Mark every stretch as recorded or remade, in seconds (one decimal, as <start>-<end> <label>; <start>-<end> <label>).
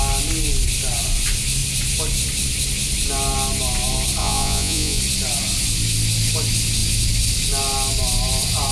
0.0-4.2 recorded; 4.2-5.0 remade; 5.0-8.7 recorded